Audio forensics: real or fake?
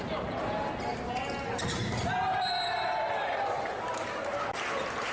real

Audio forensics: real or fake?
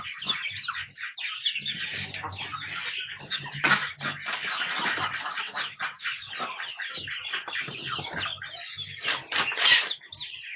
real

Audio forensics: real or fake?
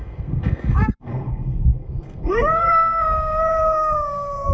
fake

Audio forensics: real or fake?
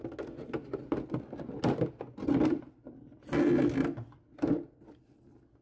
real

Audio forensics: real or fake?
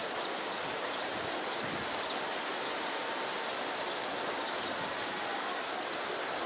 real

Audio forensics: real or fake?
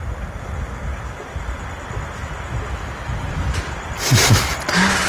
real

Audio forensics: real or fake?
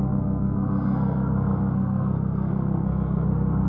fake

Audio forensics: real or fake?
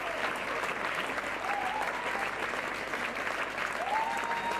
real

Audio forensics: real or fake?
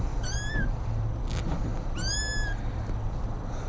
real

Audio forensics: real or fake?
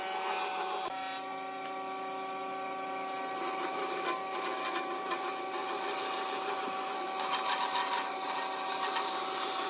real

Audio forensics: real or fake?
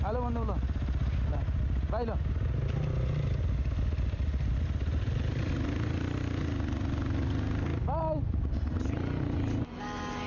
real